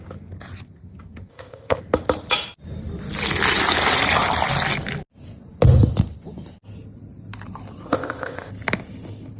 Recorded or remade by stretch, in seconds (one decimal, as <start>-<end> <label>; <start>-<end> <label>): 0.0-1.3 recorded; 1.3-1.8 remade; 1.8-7.9 recorded; 7.9-8.5 remade; 8.5-9.4 recorded